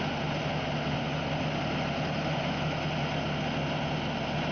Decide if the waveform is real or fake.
real